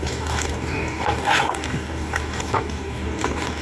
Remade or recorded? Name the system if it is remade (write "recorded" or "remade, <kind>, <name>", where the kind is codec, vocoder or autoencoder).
remade, codec, DAC